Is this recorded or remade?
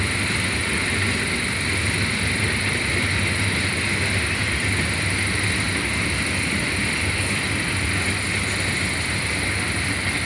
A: recorded